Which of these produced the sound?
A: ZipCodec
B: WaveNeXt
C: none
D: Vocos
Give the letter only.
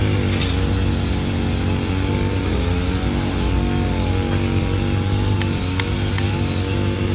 C